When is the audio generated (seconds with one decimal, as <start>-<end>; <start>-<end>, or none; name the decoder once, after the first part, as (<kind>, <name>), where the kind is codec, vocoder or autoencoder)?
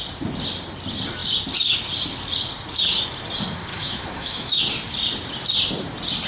3.7-4.6 (autoencoder, DAC-VAE)